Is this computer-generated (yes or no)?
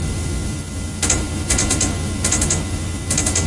no